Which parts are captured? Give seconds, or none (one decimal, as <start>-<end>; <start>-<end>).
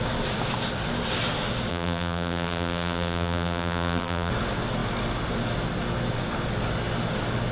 0.0-1.7; 4.3-7.5